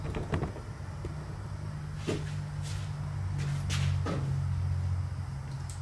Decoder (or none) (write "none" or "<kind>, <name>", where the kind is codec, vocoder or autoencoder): none